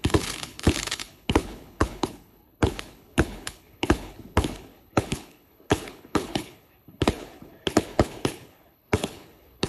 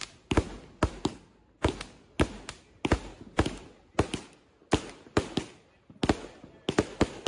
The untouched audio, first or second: second